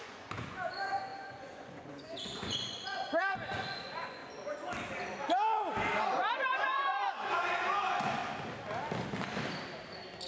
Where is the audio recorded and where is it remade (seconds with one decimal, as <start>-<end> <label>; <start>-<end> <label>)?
0.0-4.2 remade; 4.2-6.0 recorded; 6.0-8.2 remade; 8.2-10.3 recorded